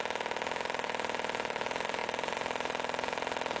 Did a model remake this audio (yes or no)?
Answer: no